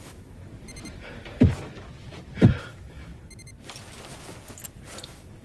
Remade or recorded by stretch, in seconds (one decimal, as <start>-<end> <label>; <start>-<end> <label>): 0.0-0.4 remade; 0.4-2.7 recorded; 2.7-3.1 remade; 3.1-5.0 recorded; 5.0-5.4 remade